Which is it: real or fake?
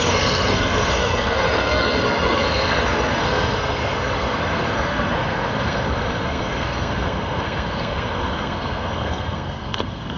fake